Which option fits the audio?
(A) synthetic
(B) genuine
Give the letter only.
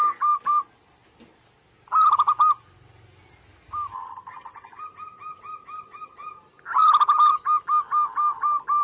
B